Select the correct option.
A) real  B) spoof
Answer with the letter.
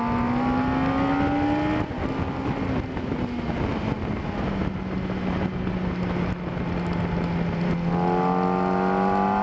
A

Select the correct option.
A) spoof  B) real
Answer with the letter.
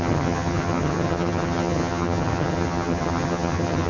A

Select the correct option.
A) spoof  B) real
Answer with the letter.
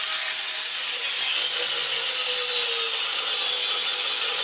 B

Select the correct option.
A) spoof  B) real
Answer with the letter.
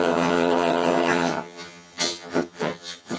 A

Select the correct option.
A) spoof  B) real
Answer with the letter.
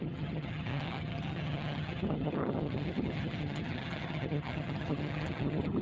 A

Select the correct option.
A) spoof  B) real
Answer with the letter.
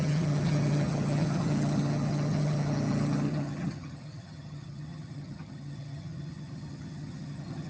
A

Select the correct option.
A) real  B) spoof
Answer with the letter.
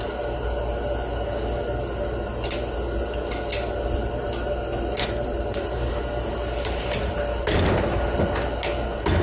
A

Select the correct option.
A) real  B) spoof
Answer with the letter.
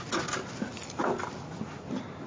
A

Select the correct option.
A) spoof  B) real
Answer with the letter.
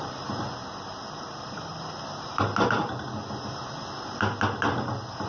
B